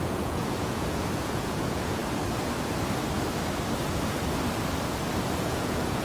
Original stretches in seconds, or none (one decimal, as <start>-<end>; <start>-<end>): 2.0-3.8; 4.2-5.4